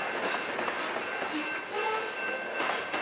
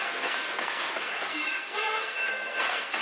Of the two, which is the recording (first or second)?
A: first